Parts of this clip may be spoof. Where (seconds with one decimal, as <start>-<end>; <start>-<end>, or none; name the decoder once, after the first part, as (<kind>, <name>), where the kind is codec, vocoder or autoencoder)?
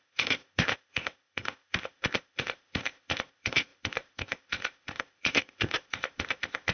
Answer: 0.0-6.7 (codec, ZipCodec)